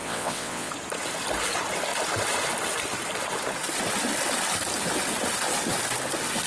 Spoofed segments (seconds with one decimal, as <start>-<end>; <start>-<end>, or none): 0.0-0.7